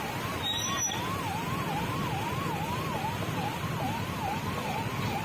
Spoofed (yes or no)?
no